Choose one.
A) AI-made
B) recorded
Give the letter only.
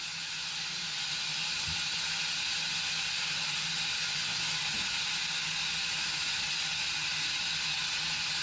B